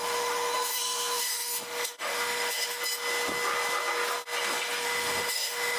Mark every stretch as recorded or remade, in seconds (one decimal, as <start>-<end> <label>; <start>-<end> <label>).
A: 0.0-2.8 remade; 2.8-4.5 recorded; 4.5-5.8 remade